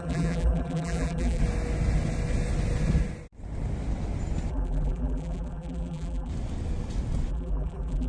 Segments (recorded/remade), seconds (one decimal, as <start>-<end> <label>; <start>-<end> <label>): 0.0-1.4 remade; 1.4-4.5 recorded; 4.5-6.3 remade; 6.3-7.3 recorded; 7.3-8.1 remade